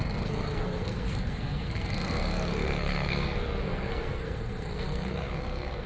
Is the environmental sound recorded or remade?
remade